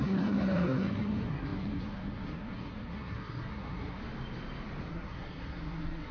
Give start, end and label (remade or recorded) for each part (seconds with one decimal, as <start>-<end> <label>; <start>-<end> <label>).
0.0-4.0 remade; 4.0-4.9 recorded; 4.9-6.1 remade